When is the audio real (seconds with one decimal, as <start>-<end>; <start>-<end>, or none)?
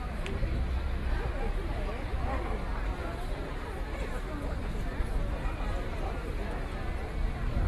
0.0-3.0; 3.6-7.7